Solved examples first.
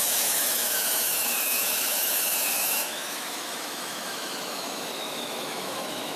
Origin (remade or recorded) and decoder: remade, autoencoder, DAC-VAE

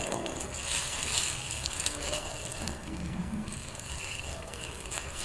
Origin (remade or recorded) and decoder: remade, codec, SNAC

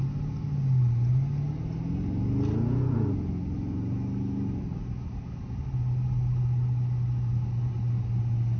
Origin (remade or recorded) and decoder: recorded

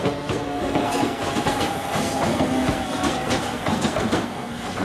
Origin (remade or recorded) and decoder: remade, codec, SNAC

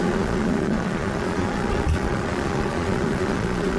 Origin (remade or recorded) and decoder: remade, vocoder, Vocos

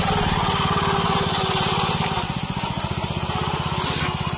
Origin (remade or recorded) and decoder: recorded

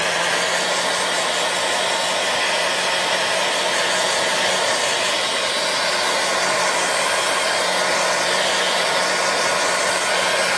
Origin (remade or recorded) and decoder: recorded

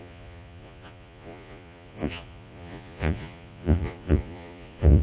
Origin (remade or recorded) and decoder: remade, vocoder, Vocos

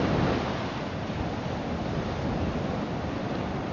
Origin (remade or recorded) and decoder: recorded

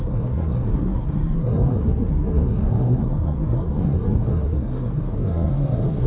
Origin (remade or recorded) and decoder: remade, codec, SNAC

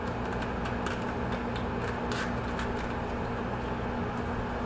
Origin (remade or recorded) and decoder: recorded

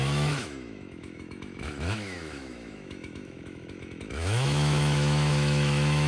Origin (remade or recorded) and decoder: remade, autoencoder, DAC-VAE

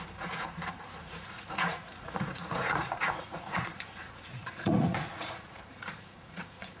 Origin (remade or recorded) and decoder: remade, vocoder, Vocos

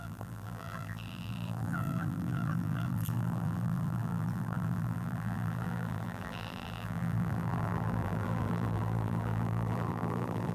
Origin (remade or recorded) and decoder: remade, vocoder, BigVGAN v2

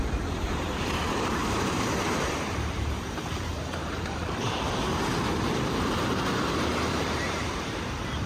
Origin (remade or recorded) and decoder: remade, vocoder, BigVGAN v2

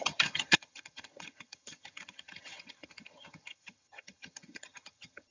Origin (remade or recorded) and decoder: remade, vocoder, HiFi-GAN